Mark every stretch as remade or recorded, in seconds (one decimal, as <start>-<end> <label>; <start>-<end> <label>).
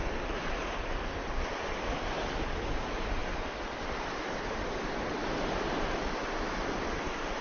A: 0.0-7.4 recorded